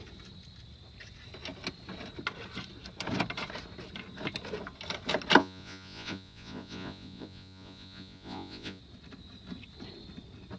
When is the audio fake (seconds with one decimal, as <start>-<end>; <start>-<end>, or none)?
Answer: 5.4-8.8